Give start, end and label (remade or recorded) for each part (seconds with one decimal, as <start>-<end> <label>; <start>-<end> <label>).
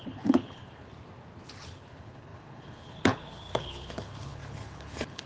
0.0-0.9 remade; 0.9-1.5 recorded; 1.5-5.3 remade